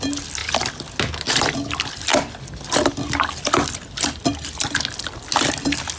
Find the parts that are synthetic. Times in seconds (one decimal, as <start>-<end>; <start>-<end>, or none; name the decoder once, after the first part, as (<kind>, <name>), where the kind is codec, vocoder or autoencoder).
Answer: none